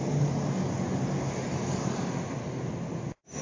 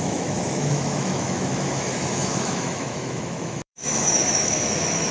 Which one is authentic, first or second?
first